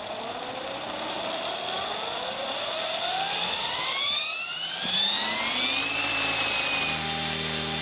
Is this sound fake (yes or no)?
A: no